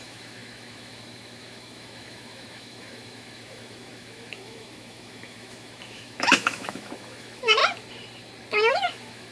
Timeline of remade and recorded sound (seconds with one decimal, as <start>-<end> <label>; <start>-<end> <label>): 0.0-7.6 remade; 7.6-8.7 recorded; 8.7-9.3 remade